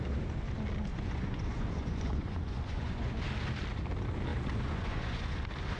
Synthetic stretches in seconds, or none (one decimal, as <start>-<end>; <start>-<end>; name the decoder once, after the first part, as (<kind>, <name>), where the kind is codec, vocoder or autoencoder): 0.9-3.2 (vocoder, Vocos); 4.3-5.3